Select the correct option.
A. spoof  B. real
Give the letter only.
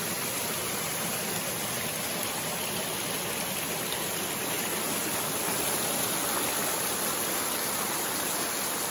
B